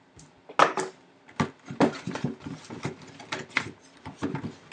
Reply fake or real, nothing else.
real